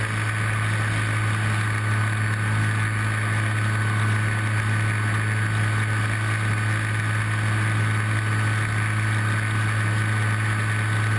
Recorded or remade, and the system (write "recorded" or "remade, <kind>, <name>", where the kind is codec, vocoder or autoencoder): recorded